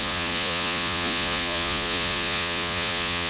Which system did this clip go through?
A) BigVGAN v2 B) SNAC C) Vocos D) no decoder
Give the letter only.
C